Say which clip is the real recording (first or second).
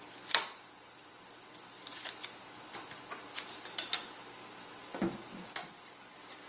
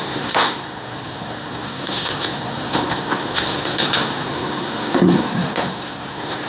first